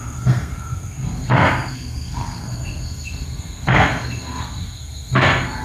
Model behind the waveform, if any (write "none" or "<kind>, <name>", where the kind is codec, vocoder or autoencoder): codec, SNAC